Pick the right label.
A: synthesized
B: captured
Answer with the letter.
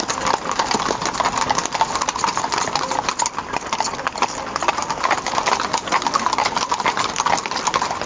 B